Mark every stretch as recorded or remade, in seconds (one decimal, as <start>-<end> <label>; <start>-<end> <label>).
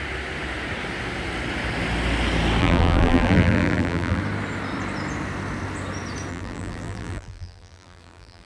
0.0-2.6 recorded; 2.6-4.2 remade; 4.2-6.3 recorded; 6.3-8.5 remade